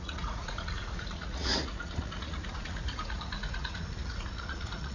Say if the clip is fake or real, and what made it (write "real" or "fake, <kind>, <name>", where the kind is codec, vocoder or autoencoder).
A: fake, vocoder, Vocos